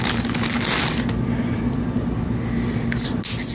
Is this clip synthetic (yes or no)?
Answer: no